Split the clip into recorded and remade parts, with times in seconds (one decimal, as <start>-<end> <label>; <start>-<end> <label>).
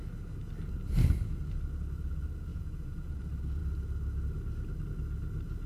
0.0-2.5 recorded; 2.5-3.2 remade; 3.2-5.7 recorded